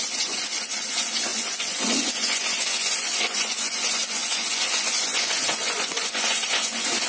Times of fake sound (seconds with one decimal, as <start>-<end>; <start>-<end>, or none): 0.0-7.1

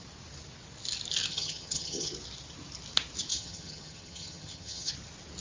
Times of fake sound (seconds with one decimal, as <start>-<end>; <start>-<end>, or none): 1.3-2.1; 3.3-4.9

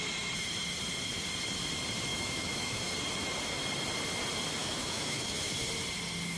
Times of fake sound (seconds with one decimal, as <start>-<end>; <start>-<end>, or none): 2.1-2.9; 4.6-5.6

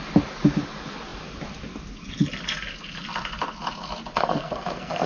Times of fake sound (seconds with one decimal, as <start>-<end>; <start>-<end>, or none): 4.1-5.1

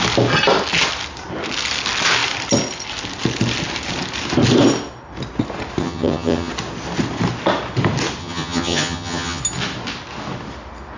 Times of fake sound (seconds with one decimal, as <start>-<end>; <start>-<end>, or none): 5.8-6.5; 8.2-9.4

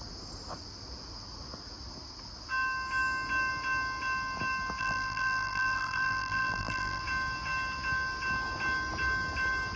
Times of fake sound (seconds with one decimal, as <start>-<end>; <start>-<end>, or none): 4.8-7.0

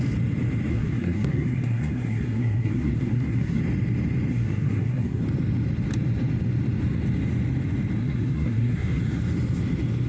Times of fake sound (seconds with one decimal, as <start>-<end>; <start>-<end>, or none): 0.7-3.6; 4.3-5.2; 8.0-9.0